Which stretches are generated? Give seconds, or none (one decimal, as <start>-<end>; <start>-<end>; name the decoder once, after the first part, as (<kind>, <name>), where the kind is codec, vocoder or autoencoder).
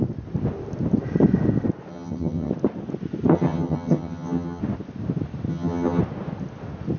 1.9-2.5 (vocoder, HiFi-GAN); 3.3-4.6; 5.5-6.0